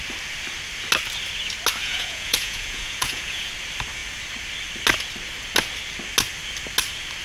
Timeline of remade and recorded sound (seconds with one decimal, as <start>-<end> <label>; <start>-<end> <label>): 0.0-1.8 recorded; 1.8-3.5 remade; 3.5-7.2 recorded